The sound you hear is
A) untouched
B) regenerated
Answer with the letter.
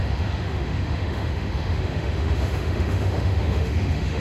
B